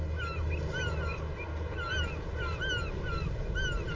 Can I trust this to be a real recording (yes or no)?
yes